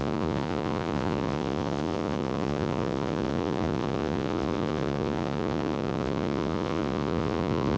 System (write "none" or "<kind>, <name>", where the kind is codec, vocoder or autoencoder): vocoder, Vocos